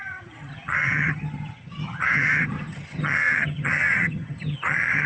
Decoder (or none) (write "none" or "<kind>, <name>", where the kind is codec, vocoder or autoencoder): vocoder, HiFi-GAN